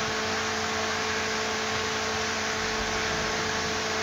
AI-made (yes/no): no